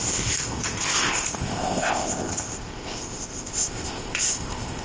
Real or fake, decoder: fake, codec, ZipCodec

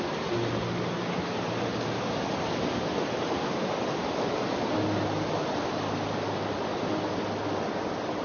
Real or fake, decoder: real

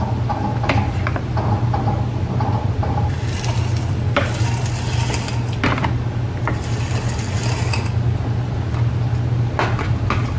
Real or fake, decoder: real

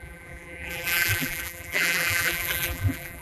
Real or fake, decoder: fake, vocoder, BigVGAN v2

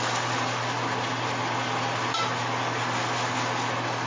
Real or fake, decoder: real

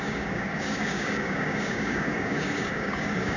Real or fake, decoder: fake, codec, DAC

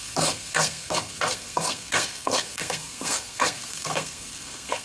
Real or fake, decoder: fake, codec, SNAC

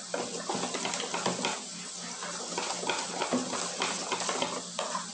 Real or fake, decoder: real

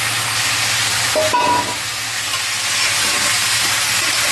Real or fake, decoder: real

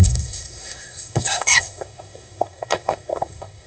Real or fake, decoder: fake, codec, SNAC